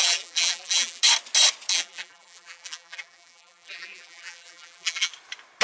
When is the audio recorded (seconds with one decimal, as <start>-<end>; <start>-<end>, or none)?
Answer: 1.0-1.7; 5.1-5.6